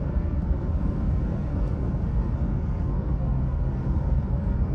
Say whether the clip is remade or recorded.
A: remade